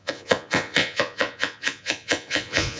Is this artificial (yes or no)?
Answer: yes